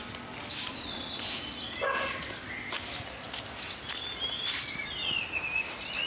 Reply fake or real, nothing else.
real